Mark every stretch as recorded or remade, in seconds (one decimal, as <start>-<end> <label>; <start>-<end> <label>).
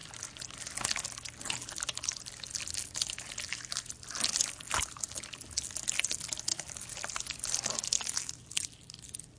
0.0-9.4 recorded